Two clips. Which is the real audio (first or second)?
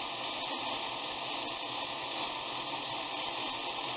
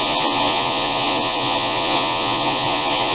first